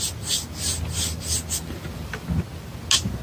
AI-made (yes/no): no